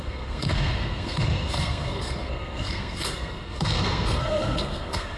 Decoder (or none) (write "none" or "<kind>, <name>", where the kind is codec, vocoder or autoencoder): codec, SNAC